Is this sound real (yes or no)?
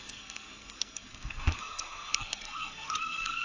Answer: no